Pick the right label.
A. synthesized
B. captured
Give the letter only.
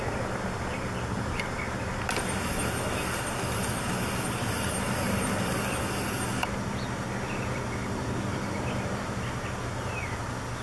B